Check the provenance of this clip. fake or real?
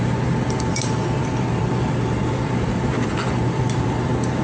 fake